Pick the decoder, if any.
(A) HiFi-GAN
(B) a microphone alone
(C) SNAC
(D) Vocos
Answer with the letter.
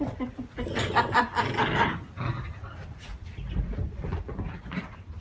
B